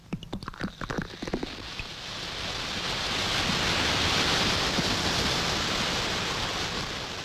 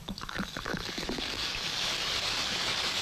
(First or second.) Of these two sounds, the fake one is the second